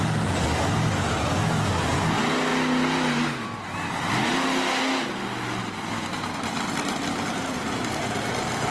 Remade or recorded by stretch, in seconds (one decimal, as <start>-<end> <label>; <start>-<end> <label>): 0.0-8.7 recorded